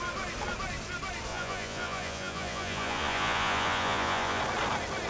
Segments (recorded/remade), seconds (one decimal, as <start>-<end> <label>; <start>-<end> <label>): 0.0-1.3 recorded; 1.3-4.4 remade; 4.4-5.1 recorded

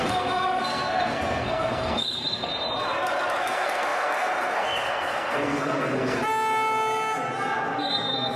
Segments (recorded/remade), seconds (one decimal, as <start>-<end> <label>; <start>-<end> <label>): 0.0-2.5 remade; 2.5-3.4 recorded; 3.4-6.2 remade; 6.2-7.8 recorded; 7.8-8.4 remade

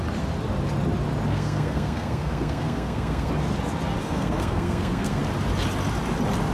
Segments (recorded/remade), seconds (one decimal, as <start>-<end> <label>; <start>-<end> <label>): 0.0-1.3 recorded; 1.3-3.3 remade; 3.3-4.0 recorded; 4.0-5.2 remade; 5.2-6.5 recorded

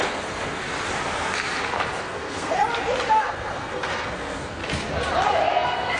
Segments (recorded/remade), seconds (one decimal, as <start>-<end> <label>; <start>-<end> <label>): 0.0-0.6 remade; 0.6-2.0 recorded; 2.0-2.6 remade; 2.6-3.2 recorded; 3.2-4.6 remade; 4.6-5.5 recorded; 5.5-6.0 remade

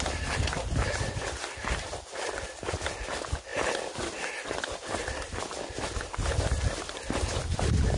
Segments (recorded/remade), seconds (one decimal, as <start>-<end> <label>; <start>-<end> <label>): 0.0-8.0 recorded